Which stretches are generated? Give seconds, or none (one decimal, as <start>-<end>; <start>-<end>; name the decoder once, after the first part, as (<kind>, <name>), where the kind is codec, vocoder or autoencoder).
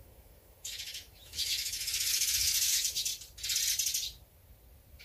0.0-3.1 (autoencoder, DAC-VAE)